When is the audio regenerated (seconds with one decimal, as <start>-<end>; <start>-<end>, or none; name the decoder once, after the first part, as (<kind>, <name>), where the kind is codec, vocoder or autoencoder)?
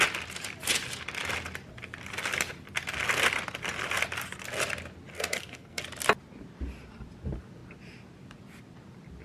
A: 5.1-5.8 (codec, SNAC)